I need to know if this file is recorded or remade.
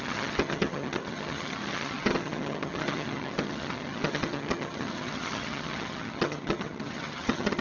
remade